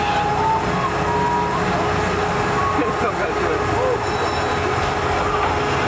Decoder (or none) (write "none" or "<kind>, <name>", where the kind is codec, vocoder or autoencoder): none